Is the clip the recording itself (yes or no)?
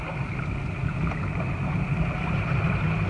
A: yes